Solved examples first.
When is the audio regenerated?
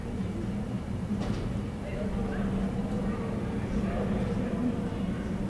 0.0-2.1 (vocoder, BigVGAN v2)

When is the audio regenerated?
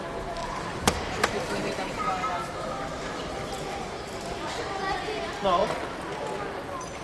0.4-2.5 (vocoder, BigVGAN v2)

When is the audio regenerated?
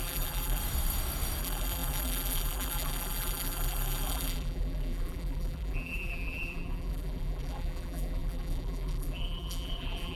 0.0-0.6 (vocoder, BigVGAN v2); 1.4-10.1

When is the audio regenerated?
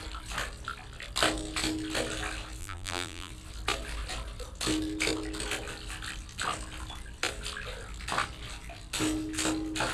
2.6-3.3 (vocoder, BigVGAN v2)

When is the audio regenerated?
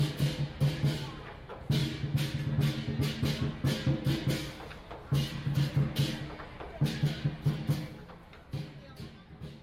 none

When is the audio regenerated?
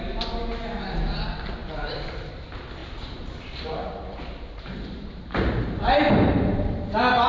2.8-6.8 (vocoder, BigVGAN v2)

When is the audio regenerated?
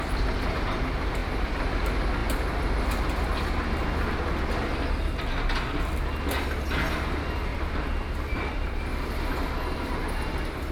1.2-1.7 (vocoder, BigVGAN v2); 7.5-10.0